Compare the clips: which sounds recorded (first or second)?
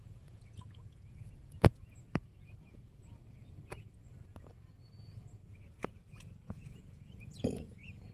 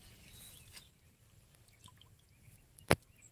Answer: second